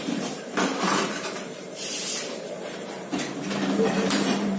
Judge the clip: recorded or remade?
remade